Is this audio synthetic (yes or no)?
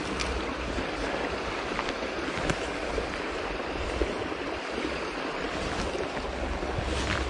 no